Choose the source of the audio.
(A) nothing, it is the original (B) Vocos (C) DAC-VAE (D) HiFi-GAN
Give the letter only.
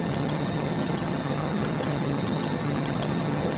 D